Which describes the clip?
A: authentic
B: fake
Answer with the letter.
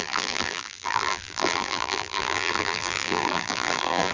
B